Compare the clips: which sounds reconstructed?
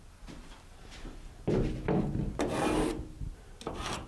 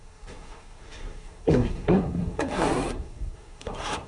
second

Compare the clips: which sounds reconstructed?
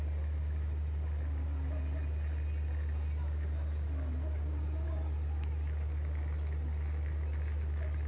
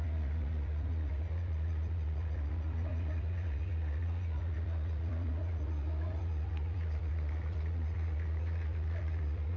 second